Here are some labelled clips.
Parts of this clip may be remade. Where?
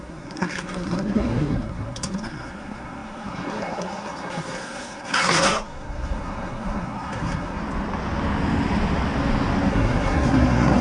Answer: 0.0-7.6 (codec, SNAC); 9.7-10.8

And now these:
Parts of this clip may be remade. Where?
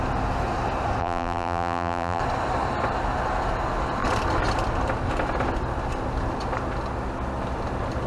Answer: 1.0-2.2 (vocoder, BigVGAN v2)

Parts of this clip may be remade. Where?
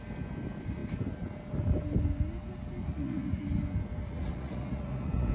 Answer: 2.8-3.4 (vocoder, Vocos); 4.0-5.3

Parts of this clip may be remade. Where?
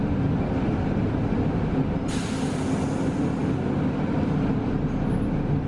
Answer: none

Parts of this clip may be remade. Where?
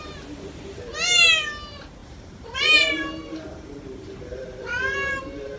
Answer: 0.0-5.6 (vocoder, BigVGAN v2)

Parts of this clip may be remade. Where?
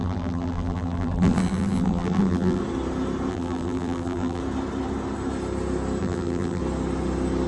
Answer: 0.0-2.6 (vocoder, BigVGAN v2); 3.3-4.4; 6.0-6.6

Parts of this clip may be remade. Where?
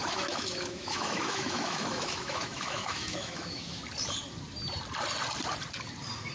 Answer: 0.0-3.8 (autoencoder, DAC-VAE)